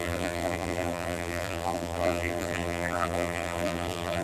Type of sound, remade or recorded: remade